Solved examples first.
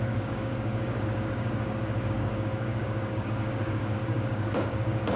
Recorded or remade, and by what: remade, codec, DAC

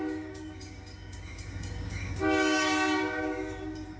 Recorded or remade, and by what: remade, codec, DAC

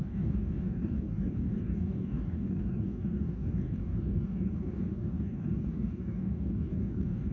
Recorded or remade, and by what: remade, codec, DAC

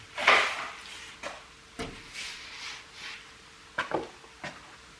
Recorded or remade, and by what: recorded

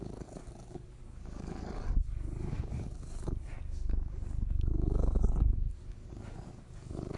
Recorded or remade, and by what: remade, codec, DAC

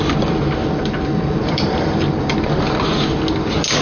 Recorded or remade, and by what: recorded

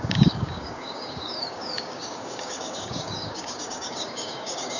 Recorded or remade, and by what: remade, codec, DAC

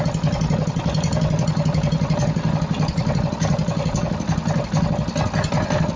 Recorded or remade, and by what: recorded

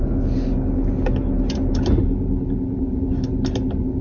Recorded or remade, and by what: recorded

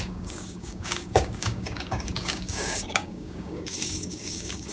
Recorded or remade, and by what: remade, codec, DAC